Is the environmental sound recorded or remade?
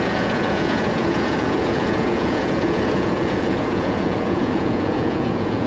remade